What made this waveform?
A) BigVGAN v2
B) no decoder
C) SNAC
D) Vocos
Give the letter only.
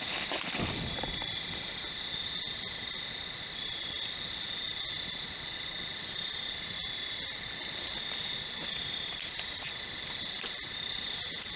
B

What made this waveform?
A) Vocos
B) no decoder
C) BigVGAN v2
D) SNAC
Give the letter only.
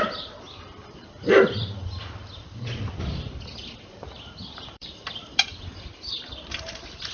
C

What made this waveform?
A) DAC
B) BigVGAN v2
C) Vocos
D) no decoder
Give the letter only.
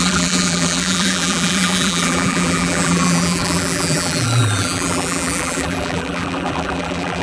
B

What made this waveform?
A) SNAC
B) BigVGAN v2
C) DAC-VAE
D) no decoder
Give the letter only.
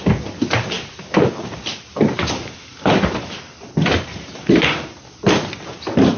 D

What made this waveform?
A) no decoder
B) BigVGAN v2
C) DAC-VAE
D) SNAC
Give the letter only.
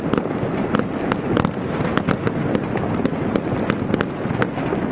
A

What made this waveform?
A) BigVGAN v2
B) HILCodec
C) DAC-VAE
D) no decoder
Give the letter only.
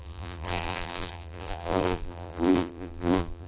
A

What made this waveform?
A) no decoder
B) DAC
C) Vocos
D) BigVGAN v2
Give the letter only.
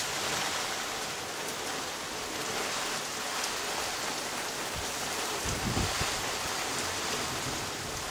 D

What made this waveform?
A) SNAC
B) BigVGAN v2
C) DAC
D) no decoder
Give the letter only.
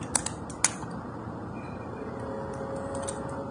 D